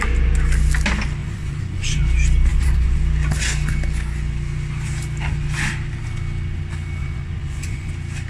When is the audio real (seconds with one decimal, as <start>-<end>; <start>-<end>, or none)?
0.0-1.2; 2.0-2.5; 3.0-7.0; 7.9-8.3